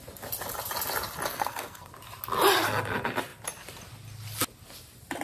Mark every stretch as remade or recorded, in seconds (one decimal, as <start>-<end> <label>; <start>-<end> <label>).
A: 0.0-1.3 recorded; 1.3-1.9 remade; 1.9-5.2 recorded